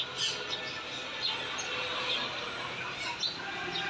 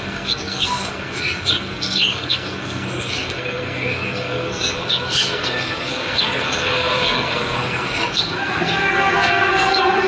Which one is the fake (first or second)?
second